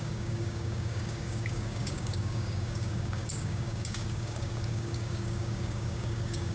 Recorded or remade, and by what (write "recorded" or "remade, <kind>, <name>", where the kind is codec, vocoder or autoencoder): remade, codec, DAC